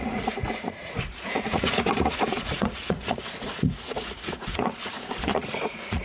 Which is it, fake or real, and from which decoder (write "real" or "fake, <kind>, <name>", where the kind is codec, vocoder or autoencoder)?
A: fake, vocoder, Vocos